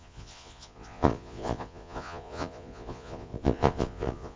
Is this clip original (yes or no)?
no